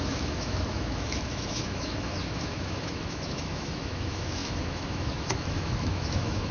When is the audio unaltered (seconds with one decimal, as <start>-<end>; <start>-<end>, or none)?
none